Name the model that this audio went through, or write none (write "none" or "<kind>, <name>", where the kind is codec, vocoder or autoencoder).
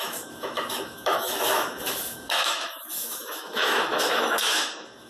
autoencoder, DAC-VAE